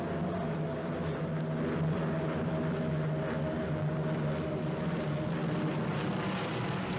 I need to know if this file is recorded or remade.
recorded